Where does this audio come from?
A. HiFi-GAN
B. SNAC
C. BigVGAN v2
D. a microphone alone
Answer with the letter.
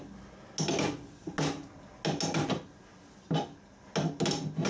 D